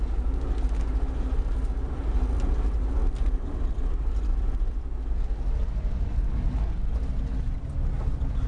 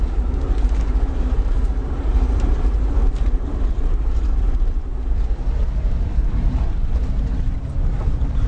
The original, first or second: first